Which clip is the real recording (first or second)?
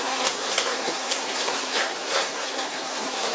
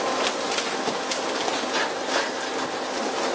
second